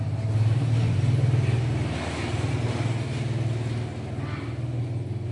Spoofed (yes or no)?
no